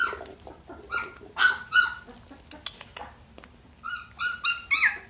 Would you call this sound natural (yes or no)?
yes